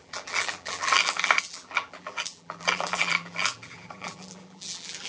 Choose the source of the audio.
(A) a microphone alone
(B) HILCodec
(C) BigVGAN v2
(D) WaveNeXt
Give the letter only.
C